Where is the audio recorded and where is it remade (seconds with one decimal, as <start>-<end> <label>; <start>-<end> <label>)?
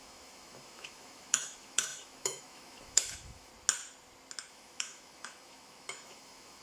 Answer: 0.0-3.5 remade; 3.5-4.5 recorded; 4.5-6.6 remade